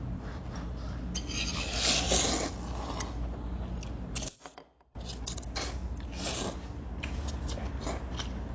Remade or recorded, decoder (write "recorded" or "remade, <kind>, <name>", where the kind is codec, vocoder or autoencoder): recorded